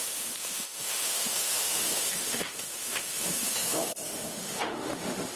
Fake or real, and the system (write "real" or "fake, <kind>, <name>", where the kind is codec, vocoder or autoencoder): fake, autoencoder, DAC-VAE